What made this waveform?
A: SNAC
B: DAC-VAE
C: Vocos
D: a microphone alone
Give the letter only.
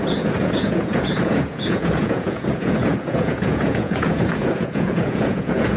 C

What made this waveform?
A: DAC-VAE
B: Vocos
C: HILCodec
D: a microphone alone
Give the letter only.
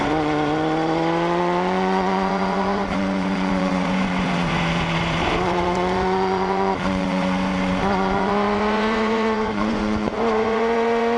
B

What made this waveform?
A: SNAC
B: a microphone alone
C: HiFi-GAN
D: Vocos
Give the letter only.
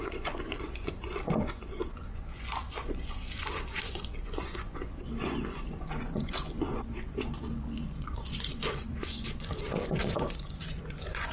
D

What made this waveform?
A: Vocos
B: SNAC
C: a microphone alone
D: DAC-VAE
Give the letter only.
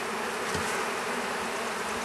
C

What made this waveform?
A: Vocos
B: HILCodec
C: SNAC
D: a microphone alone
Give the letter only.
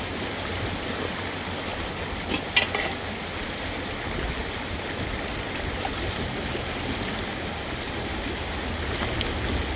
D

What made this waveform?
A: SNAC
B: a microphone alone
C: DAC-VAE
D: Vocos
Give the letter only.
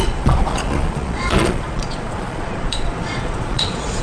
D